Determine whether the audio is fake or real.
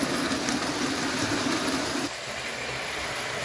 real